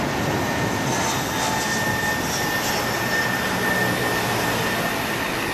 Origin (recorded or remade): recorded